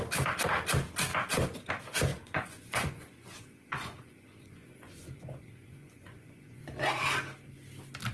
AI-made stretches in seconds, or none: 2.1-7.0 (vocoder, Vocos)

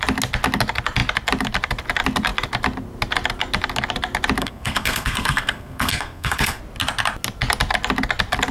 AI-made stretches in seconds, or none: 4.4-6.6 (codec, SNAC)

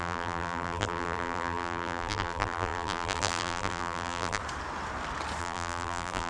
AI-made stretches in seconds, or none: 0.0-4.4 (vocoder, BigVGAN v2); 5.4-6.3

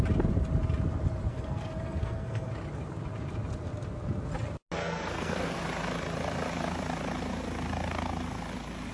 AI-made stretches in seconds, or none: 1.3-2.5 (codec, SNAC); 4.8-5.6

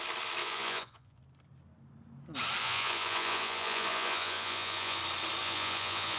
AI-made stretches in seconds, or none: 0.4-1.2 (vocoder, Vocos); 2.6-5.0; 5.4-6.2

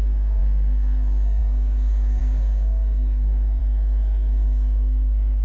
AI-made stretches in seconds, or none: 0.0-5.4 (codec, SNAC)